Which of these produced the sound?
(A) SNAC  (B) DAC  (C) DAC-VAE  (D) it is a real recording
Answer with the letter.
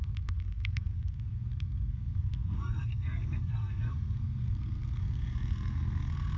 A